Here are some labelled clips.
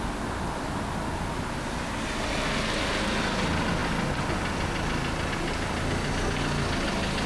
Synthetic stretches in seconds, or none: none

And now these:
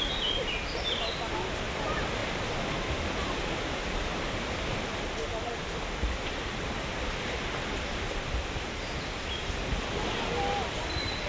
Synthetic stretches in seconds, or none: none

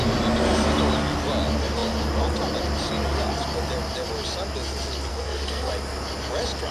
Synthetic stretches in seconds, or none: 5.1-5.7 (codec, SNAC)

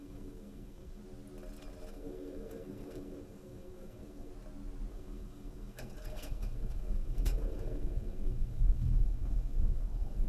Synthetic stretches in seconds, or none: 0.0-1.0 (codec, SNAC); 1.9-4.3; 4.9-10.3

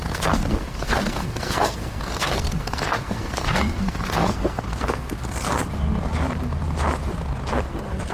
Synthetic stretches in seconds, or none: 0.0-5.6 (codec, SNAC); 7.6-8.1

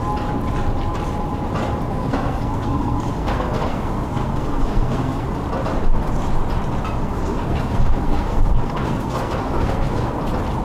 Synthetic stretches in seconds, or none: 1.9-5.3 (codec, SNAC); 7.0-10.2

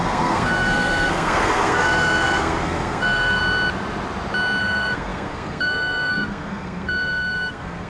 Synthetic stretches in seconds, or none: 0.0-3.4 (codec, SNAC); 4.6-7.9

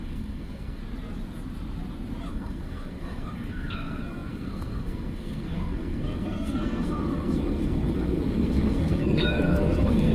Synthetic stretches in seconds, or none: 0.0-0.8 (codec, SNAC); 2.3-10.1